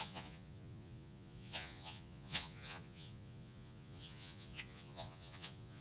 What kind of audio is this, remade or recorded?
remade